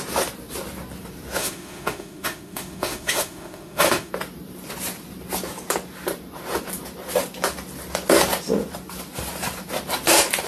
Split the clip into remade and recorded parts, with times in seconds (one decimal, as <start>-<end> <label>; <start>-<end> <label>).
0.0-1.4 recorded; 1.4-4.1 remade; 4.1-10.5 recorded